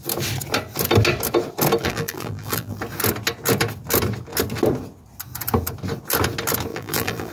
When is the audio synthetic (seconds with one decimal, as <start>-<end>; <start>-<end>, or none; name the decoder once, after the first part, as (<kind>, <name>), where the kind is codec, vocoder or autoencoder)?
1.8-2.8 (vocoder, BigVGAN v2); 6.7-7.3